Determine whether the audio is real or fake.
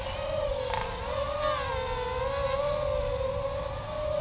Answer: real